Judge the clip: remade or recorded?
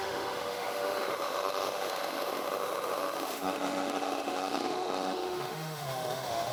remade